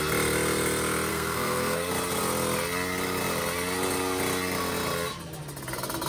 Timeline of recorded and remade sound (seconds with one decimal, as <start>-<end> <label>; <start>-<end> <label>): 0.0-1.1 recorded; 1.1-1.9 remade; 1.9-6.1 recorded